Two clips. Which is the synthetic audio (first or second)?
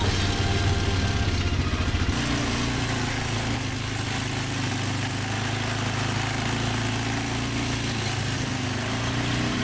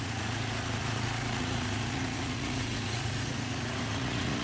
second